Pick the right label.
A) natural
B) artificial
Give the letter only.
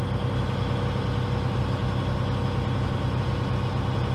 A